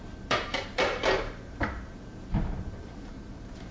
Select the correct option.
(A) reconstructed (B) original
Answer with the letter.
A